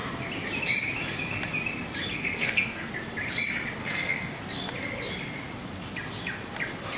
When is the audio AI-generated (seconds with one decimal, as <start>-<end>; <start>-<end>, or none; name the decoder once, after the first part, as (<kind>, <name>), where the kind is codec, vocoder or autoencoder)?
2.1-2.9 (codec, SNAC); 3.8-4.4